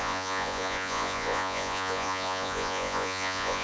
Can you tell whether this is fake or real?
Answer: fake